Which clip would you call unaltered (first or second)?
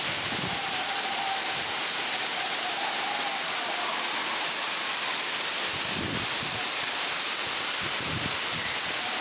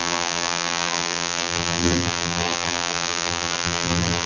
first